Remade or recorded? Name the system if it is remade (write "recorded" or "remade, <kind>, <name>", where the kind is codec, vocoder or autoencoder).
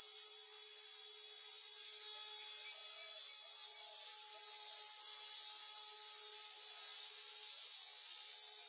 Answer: recorded